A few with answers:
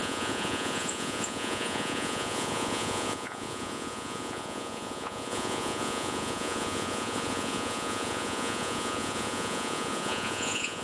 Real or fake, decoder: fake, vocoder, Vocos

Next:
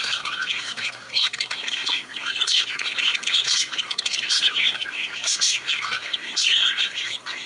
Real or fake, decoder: fake, codec, SNAC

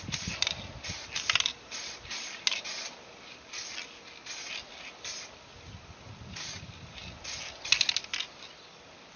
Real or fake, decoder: real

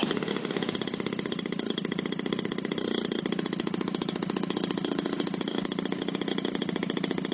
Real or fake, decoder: fake, vocoder, BigVGAN v2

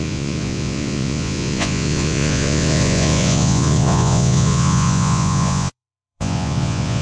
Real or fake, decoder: fake, vocoder, Vocos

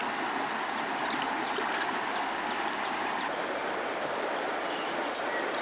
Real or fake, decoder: real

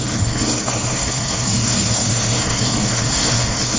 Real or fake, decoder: fake, codec, SNAC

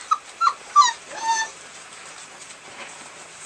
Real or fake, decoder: fake, vocoder, BigVGAN v2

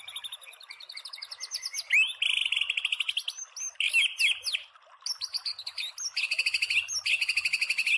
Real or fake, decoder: real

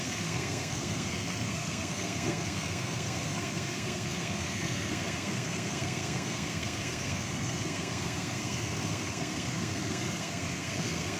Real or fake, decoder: fake, codec, SNAC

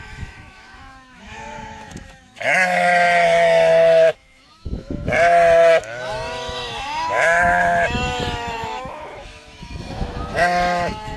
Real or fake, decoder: fake, autoencoder, DAC-VAE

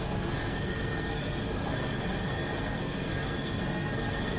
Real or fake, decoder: fake, codec, SNAC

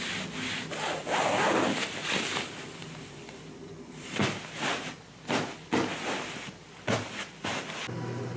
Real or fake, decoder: real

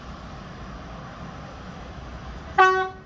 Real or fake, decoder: real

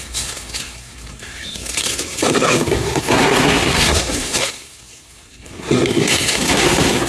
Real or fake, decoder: fake, codec, SNAC